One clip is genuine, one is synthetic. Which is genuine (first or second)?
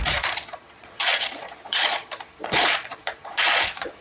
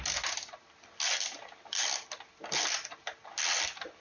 second